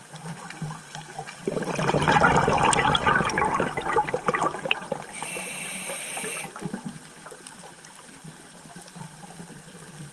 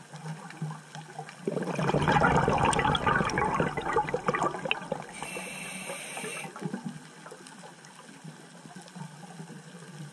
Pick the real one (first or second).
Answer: second